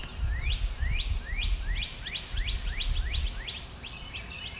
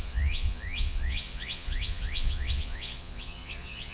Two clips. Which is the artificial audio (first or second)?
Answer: second